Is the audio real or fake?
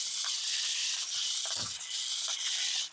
real